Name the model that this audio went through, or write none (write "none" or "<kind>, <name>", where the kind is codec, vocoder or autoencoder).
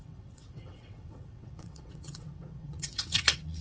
vocoder, WaveNeXt